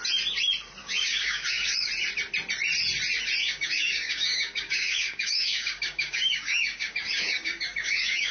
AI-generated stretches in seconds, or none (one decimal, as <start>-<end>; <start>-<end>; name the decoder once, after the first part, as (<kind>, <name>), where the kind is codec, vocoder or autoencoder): 0.8-1.9 (codec, DAC); 3.4-8.3